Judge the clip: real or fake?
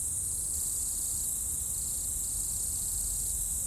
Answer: real